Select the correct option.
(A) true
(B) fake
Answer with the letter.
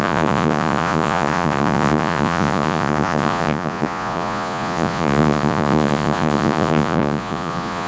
B